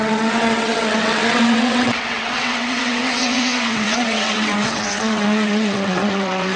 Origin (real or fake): fake